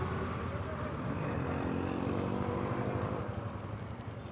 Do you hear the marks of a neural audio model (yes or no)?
no